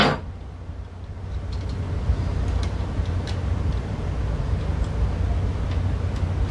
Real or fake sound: real